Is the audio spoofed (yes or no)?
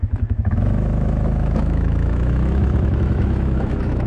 yes